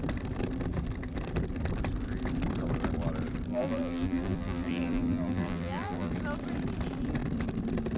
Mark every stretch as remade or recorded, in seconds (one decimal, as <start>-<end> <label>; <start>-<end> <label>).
0.0-3.5 recorded; 3.5-6.1 remade; 6.1-8.0 recorded